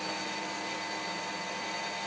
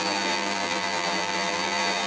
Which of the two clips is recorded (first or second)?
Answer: first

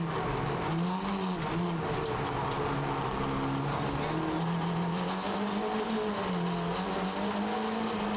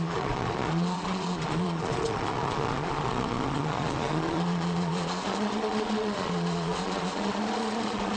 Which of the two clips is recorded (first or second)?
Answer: first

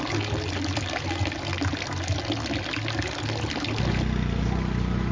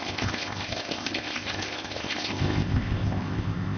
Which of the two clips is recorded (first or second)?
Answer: first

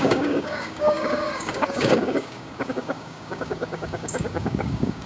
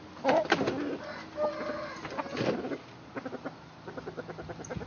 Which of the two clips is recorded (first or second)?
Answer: second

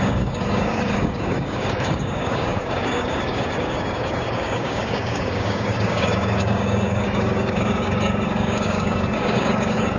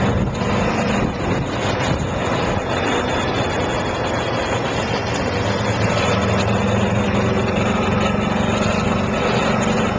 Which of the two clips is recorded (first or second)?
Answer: second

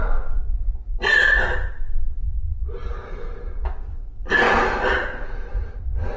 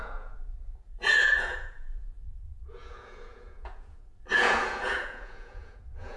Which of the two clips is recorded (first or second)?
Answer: first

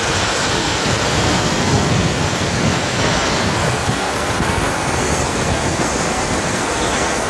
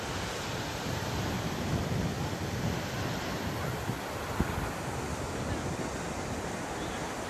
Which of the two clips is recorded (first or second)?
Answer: second